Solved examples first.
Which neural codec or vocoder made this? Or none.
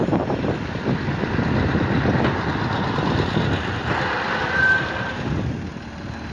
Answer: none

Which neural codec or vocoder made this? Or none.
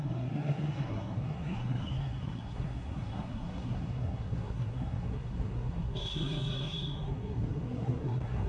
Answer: codec, SNAC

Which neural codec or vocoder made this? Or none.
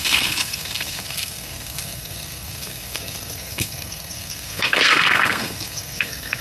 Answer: codec, SNAC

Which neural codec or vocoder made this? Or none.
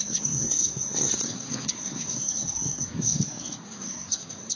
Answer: codec, SNAC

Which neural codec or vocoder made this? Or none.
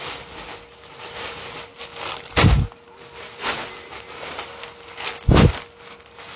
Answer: none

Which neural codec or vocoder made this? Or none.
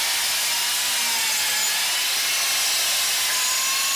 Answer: none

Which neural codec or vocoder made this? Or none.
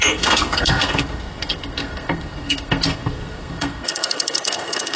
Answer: codec, SNAC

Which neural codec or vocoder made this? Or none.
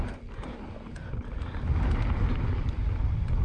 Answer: none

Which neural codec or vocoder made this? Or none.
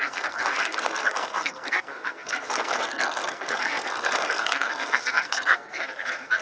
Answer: codec, SNAC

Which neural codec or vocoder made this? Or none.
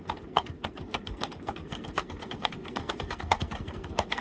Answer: codec, SNAC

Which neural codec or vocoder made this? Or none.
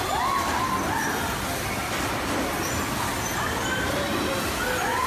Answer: none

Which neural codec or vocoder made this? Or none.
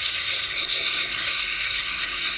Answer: codec, SNAC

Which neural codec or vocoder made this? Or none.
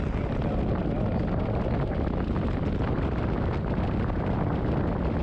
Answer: none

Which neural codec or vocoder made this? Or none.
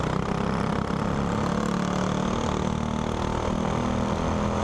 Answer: none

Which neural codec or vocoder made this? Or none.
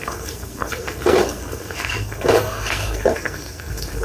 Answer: codec, SNAC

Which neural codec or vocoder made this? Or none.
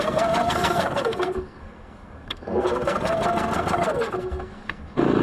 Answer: codec, SNAC